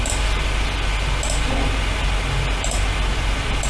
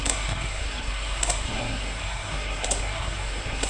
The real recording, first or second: first